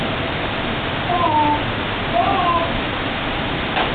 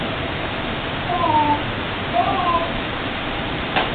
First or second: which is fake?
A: second